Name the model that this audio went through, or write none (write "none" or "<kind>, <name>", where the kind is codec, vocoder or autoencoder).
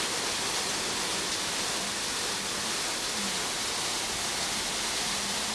none